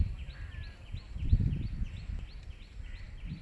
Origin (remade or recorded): recorded